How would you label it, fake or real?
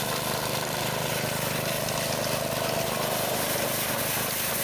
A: real